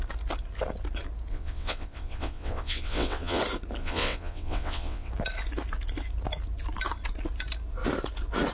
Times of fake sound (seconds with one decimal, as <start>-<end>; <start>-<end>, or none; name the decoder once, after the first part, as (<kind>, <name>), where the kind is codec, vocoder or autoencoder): 1.3-3.4 (vocoder, WaveNeXt); 3.8-5.1